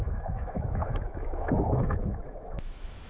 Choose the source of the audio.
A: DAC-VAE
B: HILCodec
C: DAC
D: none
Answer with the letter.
A